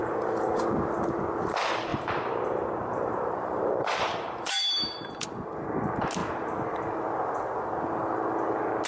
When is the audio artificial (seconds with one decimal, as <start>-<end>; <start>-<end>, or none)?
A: 0.0-0.6; 1.9-5.1